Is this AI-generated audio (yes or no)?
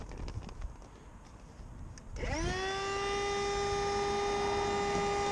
no